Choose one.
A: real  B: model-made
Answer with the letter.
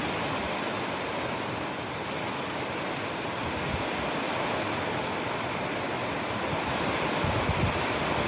A